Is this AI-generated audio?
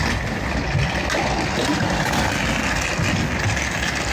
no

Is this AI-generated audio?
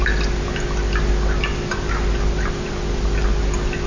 no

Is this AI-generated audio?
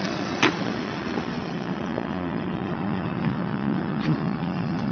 yes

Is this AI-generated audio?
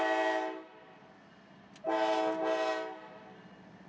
no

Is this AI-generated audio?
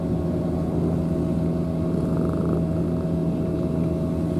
no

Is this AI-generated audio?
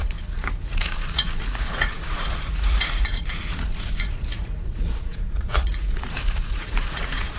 yes